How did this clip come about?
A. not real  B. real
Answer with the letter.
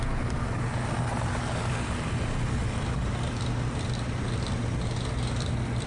B